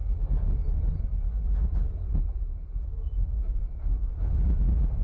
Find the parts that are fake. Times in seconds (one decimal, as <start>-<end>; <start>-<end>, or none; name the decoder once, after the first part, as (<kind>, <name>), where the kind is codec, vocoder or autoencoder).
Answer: 3.2-4.1 (codec, SNAC)